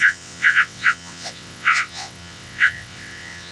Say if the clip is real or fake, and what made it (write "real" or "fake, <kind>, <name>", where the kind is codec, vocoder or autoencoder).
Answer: fake, vocoder, WaveNeXt